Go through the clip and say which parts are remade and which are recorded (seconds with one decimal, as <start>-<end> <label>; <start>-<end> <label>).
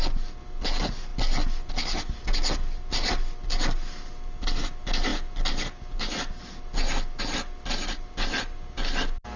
0.0-9.4 recorded